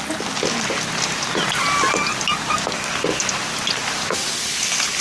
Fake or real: real